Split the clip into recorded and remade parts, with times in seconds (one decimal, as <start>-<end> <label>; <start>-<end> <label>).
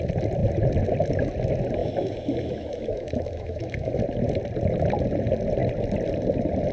0.0-1.8 recorded; 1.8-4.0 remade; 4.0-6.7 recorded